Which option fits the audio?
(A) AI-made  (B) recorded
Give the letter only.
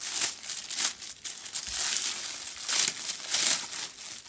B